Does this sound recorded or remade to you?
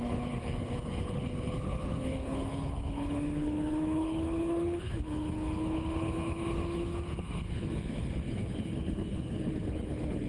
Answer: remade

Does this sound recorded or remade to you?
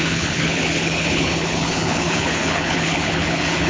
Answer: remade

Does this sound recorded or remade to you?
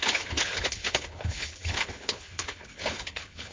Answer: remade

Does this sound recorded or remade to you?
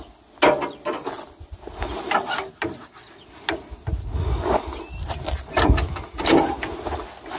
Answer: recorded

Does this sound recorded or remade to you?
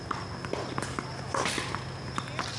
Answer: recorded